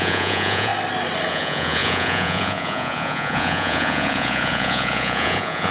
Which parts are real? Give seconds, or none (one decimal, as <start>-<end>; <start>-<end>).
0.7-1.3